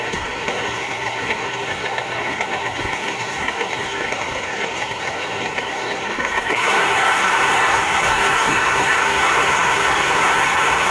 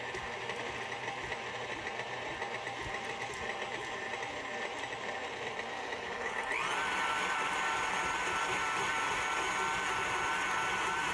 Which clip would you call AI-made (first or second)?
first